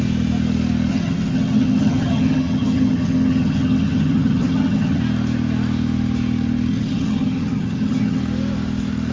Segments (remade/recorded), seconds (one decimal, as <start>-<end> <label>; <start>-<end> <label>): 0.0-0.9 recorded; 0.9-5.0 remade; 5.0-6.7 recorded; 6.7-8.2 remade; 8.2-9.1 recorded